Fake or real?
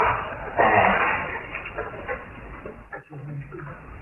real